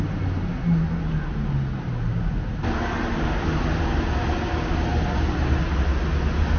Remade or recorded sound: recorded